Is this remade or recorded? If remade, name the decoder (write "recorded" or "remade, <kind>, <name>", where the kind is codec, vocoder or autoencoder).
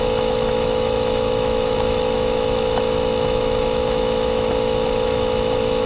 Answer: remade, autoencoder, DAC-VAE